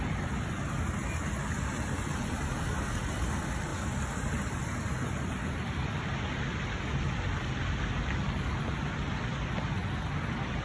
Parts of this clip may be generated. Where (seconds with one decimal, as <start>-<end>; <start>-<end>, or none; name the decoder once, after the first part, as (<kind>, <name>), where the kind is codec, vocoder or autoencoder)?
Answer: none